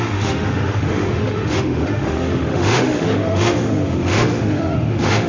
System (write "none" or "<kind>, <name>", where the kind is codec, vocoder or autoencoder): autoencoder, DAC-VAE